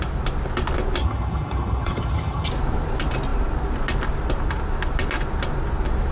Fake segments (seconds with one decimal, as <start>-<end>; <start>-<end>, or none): 1.0-2.5